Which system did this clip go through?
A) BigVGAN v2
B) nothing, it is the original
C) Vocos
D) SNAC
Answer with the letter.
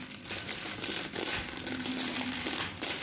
B